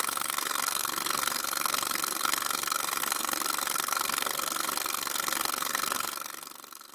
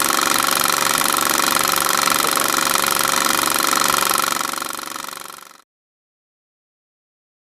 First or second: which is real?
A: second